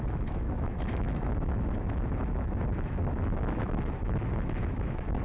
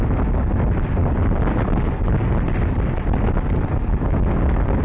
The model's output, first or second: first